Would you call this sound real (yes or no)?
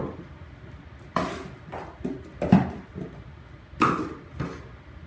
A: yes